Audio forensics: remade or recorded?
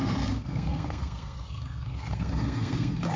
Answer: remade